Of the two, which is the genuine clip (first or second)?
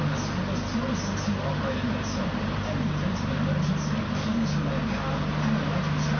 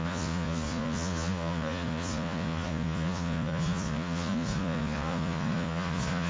first